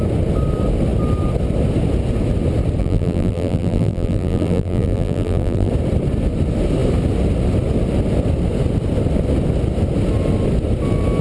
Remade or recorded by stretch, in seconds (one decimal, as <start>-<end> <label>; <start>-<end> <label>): 0.0-2.8 recorded; 2.8-5.7 remade; 5.7-11.2 recorded

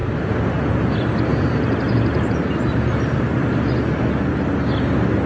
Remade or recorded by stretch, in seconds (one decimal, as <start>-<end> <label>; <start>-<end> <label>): 0.0-1.3 recorded; 1.3-3.7 remade; 3.7-5.3 recorded